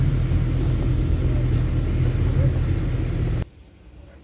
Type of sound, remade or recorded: recorded